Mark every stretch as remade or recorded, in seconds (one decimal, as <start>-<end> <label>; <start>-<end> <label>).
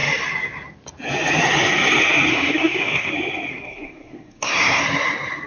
0.0-2.3 recorded; 2.3-3.1 remade; 3.1-3.5 recorded; 3.5-4.8 remade; 4.8-5.5 recorded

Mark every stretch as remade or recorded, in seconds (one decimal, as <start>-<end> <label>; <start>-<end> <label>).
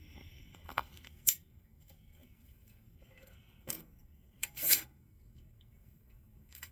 0.0-6.7 remade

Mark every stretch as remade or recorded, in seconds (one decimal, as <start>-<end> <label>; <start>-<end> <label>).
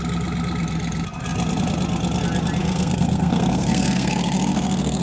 0.0-2.6 recorded; 2.6-5.0 remade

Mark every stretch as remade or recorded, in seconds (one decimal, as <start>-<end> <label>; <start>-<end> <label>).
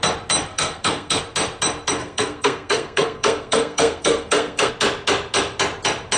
0.0-0.5 recorded; 0.5-1.2 remade; 1.2-2.0 recorded; 2.0-4.7 remade; 4.7-6.2 recorded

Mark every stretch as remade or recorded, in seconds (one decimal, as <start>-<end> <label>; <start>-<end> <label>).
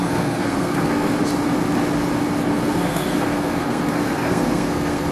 0.0-1.1 remade; 1.1-2.5 recorded; 2.5-5.1 remade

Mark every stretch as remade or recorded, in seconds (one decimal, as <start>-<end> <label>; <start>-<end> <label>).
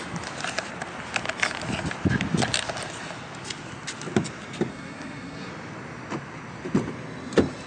0.0-4.7 recorded; 4.7-5.5 remade; 5.5-7.7 recorded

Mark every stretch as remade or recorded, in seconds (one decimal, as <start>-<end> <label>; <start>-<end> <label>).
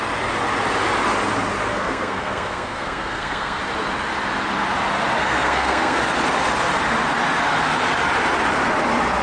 0.0-1.7 recorded; 1.7-3.6 remade; 3.6-5.2 recorded; 5.2-6.0 remade; 6.0-9.2 recorded